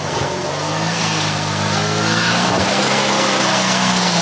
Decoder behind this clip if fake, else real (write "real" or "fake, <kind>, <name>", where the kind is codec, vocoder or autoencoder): fake, codec, SNAC